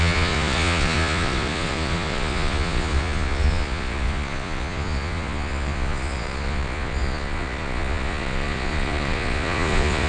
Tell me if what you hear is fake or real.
fake